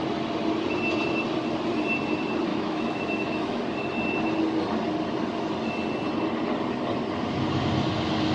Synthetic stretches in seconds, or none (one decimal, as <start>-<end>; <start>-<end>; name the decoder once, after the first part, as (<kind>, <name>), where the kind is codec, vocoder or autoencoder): 2.5-3.6 (autoencoder, DAC-VAE)